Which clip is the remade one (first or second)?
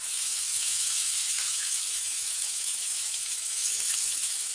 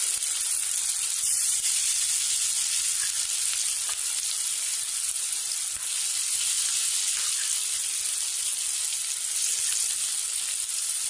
first